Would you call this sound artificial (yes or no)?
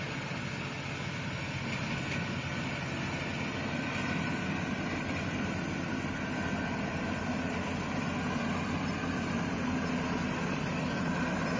no